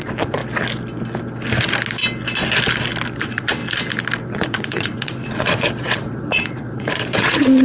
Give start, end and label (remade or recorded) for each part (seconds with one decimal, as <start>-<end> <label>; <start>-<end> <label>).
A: 0.0-0.4 remade; 0.4-3.2 recorded; 3.2-3.6 remade; 3.6-4.3 recorded; 4.3-7.6 remade